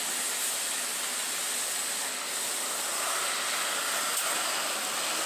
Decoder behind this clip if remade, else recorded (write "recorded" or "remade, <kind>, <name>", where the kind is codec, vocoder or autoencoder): recorded